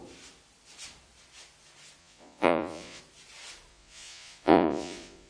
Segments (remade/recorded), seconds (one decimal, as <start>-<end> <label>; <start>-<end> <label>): 0.0-2.0 recorded; 2.0-3.0 remade; 3.0-3.7 recorded; 3.7-5.3 remade

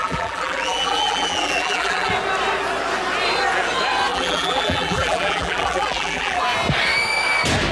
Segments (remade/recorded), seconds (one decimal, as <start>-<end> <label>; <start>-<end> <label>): 0.0-2.1 remade; 2.1-4.1 recorded; 4.1-6.4 remade; 6.4-7.7 recorded